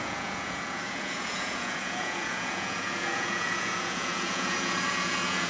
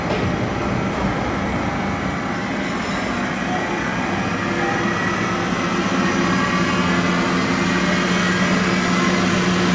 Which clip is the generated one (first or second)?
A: first